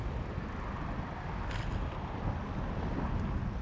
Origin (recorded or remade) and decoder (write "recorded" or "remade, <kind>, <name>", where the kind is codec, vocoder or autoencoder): recorded